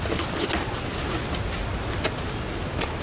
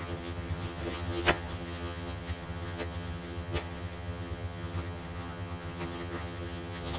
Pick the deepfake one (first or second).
second